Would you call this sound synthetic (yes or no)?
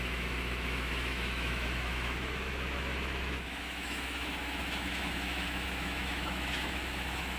yes